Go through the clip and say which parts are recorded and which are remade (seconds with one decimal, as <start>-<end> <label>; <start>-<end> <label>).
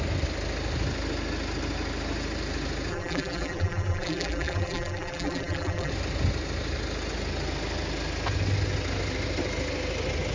0.0-2.9 recorded; 2.9-5.9 remade; 5.9-10.3 recorded